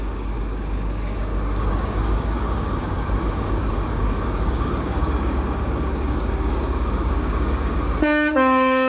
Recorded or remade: remade